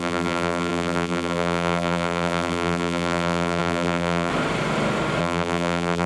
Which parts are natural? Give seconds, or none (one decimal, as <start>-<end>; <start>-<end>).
4.3-5.2